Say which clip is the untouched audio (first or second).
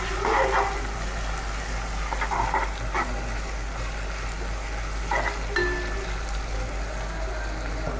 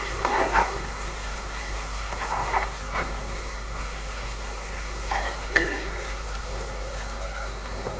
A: first